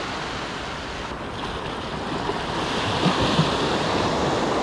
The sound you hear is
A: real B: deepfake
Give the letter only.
A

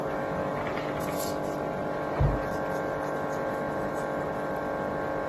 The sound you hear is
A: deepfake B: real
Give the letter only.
B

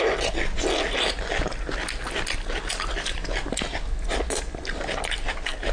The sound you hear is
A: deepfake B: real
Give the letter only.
B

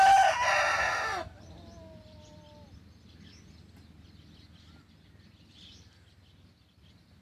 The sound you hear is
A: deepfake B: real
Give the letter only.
B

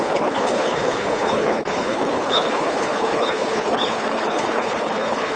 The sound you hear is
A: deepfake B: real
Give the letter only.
A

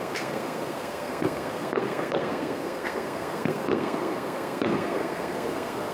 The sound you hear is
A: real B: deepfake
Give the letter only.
B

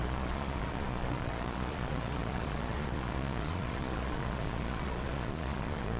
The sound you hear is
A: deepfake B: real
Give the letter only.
A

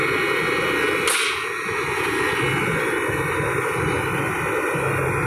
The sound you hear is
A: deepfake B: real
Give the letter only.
B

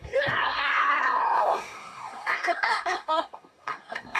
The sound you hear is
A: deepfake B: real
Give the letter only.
A